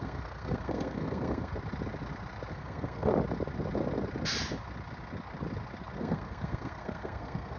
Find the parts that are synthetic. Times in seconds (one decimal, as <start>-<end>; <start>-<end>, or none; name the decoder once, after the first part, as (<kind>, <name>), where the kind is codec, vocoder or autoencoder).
0.0-1.5 (codec, SNAC); 2.5-3.1; 6.0-7.6